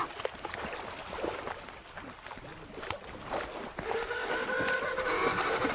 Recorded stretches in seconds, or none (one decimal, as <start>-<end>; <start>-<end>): 0.0-5.7